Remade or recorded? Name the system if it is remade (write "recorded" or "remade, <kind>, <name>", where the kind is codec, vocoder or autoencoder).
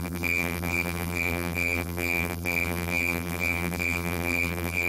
remade, vocoder, BigVGAN v2